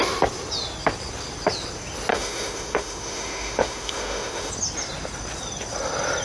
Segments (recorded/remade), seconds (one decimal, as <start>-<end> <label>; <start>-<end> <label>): 0.0-2.1 recorded; 2.1-4.5 remade; 4.5-6.2 recorded